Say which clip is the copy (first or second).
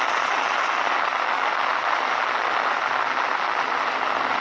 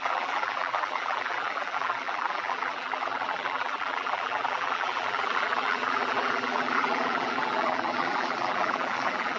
second